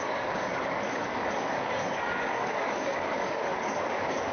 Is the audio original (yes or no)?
no